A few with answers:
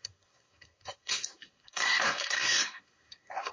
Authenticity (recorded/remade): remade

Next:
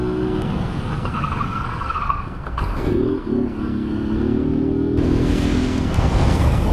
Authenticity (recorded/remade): remade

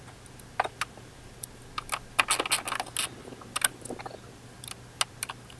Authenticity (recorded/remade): recorded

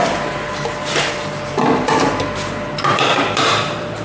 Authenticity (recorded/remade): recorded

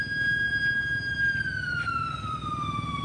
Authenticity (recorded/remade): recorded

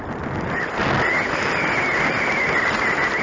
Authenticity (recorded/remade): recorded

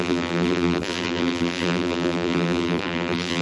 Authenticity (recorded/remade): remade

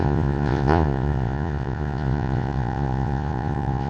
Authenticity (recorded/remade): remade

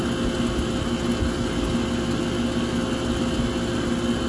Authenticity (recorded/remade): recorded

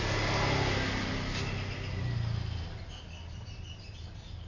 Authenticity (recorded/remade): recorded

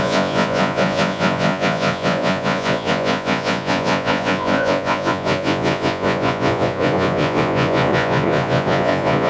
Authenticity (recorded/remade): remade